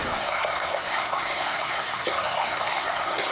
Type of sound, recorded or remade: remade